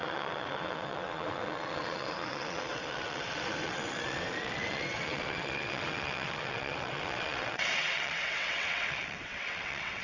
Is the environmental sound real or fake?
fake